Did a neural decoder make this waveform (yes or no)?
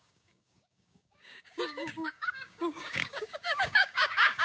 yes